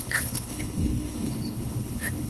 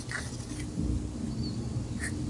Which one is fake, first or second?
first